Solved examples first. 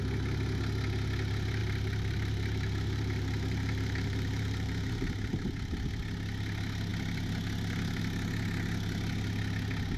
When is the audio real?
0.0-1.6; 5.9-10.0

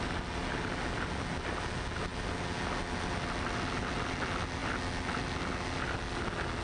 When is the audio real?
0.0-6.6

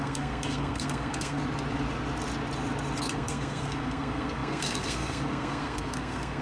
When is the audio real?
1.4-3.0

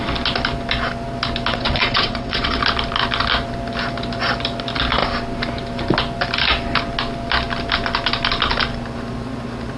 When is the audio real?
0.0-1.5; 2.6-9.8

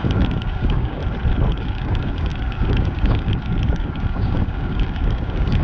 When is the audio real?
1.0-1.5

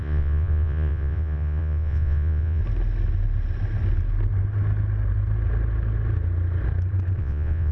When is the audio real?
2.6-7.2

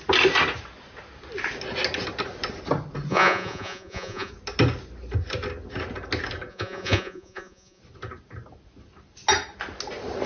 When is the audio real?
0.0-3.1; 4.3-6.5; 7.8-10.3